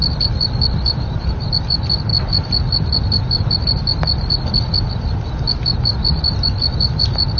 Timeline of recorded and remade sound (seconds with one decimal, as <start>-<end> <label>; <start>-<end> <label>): 0.0-7.4 recorded